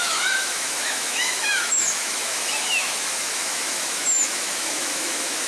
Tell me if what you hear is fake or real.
fake